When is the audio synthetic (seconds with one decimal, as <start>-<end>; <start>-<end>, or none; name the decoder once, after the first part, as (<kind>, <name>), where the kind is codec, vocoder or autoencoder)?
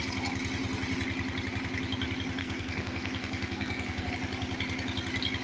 2.4-4.1 (codec, SNAC)